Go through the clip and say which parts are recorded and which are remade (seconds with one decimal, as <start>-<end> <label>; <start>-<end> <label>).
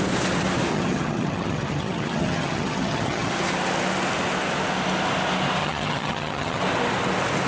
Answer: 0.0-0.7 recorded; 0.7-3.3 remade; 3.3-5.6 recorded; 5.6-6.6 remade; 6.6-7.5 recorded